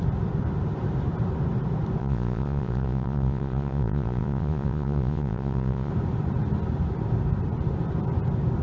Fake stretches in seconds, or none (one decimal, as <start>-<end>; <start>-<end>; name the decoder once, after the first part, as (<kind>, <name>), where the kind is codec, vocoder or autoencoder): 2.0-5.9 (vocoder, Vocos)